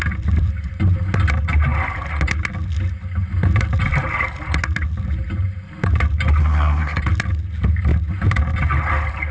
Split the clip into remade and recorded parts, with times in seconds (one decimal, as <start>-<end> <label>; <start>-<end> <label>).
0.0-6.4 recorded; 6.4-7.0 remade; 7.0-9.3 recorded